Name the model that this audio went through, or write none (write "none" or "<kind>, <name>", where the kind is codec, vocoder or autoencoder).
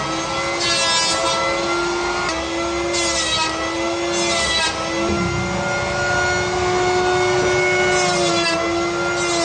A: none